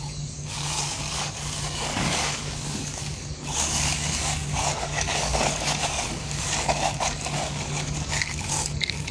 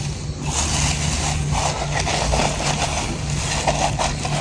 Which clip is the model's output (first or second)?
first